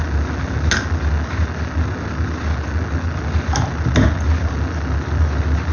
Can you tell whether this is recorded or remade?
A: recorded